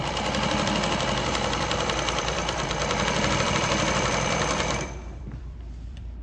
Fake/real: fake